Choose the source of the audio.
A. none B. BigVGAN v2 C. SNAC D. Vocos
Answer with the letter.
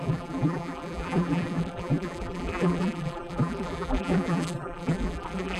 B